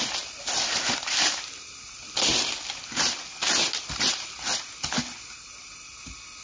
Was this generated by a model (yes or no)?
no